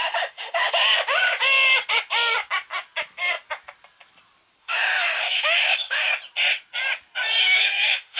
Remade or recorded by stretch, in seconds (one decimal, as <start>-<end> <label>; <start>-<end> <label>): 0.0-0.8 remade; 0.8-4.6 recorded; 4.6-6.1 remade; 6.1-7.4 recorded; 7.4-8.2 remade